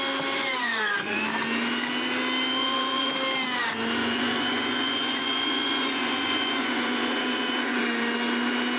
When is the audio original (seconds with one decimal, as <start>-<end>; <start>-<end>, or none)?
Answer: 0.0-0.4; 1.2-2.6; 3.1-4.0; 7.8-8.8